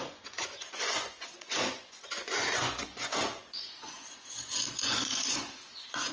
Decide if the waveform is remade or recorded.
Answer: remade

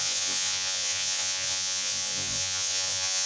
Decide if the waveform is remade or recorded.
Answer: remade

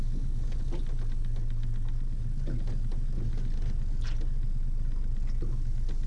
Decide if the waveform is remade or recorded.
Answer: recorded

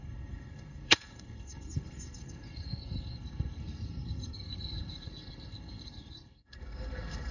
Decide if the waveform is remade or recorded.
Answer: remade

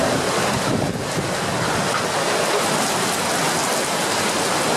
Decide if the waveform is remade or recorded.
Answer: recorded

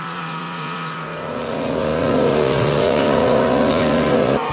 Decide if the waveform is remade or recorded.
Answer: remade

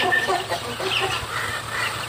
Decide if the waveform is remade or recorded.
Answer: remade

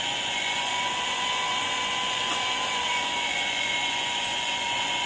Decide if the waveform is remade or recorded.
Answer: remade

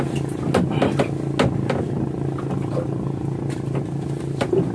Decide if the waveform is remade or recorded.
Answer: recorded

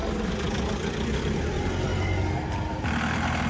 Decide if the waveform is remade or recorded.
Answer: recorded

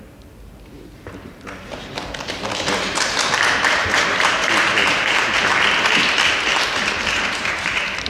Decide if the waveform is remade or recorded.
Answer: remade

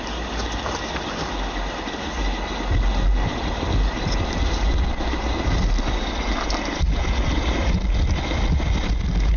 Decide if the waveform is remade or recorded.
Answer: recorded